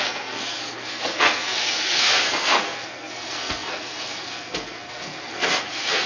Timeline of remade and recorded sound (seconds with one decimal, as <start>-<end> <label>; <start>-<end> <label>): 0.0-6.1 remade